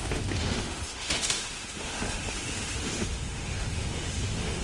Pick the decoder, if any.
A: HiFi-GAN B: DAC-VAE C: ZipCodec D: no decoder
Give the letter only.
B